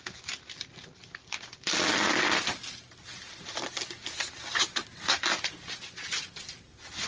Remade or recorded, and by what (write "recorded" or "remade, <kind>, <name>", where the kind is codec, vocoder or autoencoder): recorded